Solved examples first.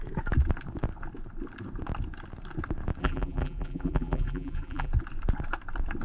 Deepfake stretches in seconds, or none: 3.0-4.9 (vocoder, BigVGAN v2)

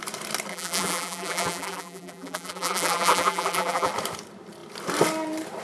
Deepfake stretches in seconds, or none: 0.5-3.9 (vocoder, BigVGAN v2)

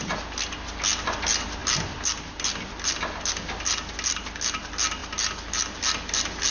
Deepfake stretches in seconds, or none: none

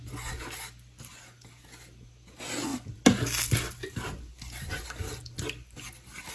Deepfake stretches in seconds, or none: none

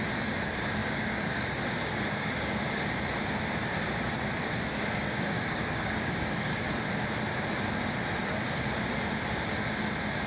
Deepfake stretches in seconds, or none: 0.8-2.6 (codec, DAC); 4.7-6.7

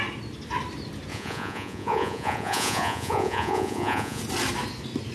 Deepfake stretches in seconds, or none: 1.1-4.2 (vocoder, Vocos)

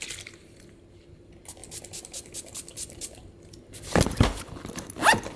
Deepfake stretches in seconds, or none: none

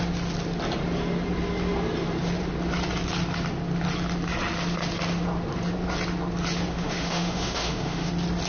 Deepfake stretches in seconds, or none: 6.7-8.1 (autoencoder, DAC-VAE)